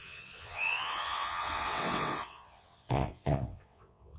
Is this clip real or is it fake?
fake